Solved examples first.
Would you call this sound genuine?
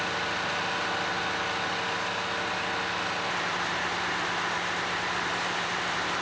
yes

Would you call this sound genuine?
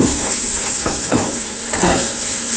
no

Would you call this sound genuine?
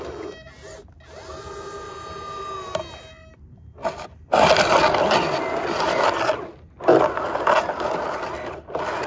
yes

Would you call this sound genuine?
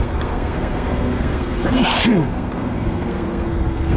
no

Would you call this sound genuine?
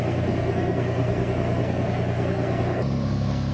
no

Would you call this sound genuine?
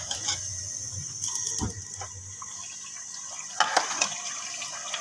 yes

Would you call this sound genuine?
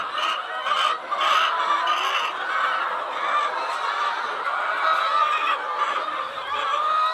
yes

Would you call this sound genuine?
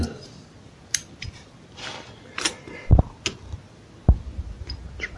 yes